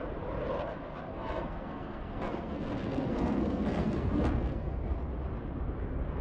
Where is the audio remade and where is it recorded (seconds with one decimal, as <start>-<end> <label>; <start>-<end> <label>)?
0.0-1.1 recorded; 1.1-4.8 remade; 4.8-6.2 recorded